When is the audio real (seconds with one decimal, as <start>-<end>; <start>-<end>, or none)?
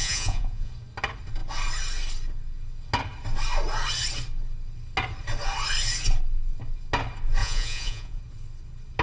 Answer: 0.7-7.4; 8.2-9.0